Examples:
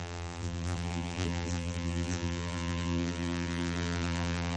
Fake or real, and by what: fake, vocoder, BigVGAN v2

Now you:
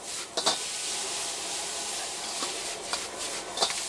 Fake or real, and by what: real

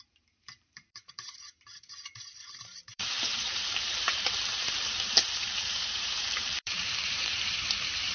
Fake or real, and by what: fake, vocoder, BigVGAN v2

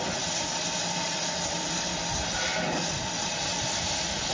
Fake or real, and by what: real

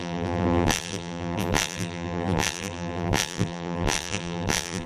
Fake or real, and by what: fake, vocoder, BigVGAN v2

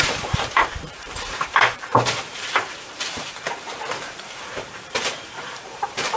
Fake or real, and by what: fake, vocoder, BigVGAN v2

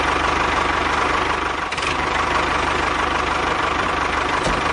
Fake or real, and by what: fake, vocoder, BigVGAN v2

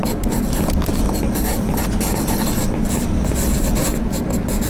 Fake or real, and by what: real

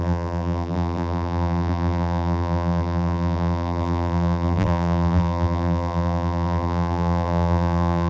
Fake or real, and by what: fake, vocoder, BigVGAN v2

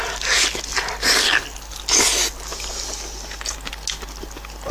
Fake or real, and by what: real